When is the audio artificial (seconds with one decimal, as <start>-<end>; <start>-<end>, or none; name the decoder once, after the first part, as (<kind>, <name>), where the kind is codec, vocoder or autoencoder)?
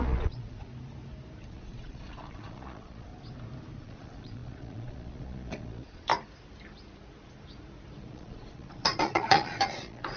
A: 0.0-0.7 (vocoder, Vocos); 1.5-3.1; 3.8-6.1; 8.0-10.2